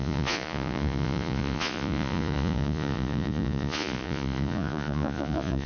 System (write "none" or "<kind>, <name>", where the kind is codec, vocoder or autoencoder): vocoder, Vocos